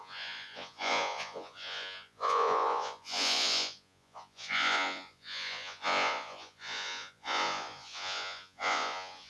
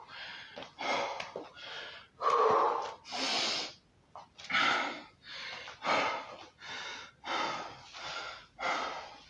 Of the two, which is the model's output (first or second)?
first